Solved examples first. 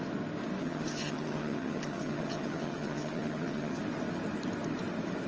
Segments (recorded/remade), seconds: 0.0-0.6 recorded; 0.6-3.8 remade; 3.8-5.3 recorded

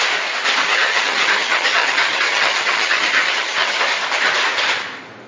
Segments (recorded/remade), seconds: 0.0-0.6 recorded; 0.6-3.8 remade; 3.8-5.3 recorded

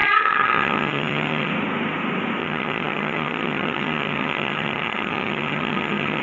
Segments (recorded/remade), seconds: 0.0-1.5 remade; 1.5-2.4 recorded; 2.4-6.2 remade

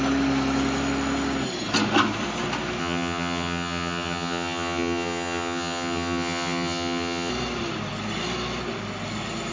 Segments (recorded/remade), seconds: 0.0-2.8 recorded; 2.8-7.3 remade; 7.3-9.5 recorded

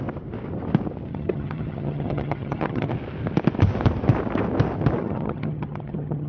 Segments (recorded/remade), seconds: 0.0-1.1 recorded; 1.1-2.9 remade; 2.9-5.0 recorded; 5.0-6.3 remade